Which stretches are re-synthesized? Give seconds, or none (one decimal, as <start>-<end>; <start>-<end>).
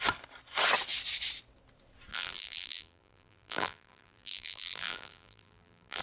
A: 2.1-6.0